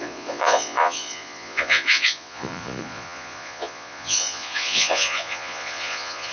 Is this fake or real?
fake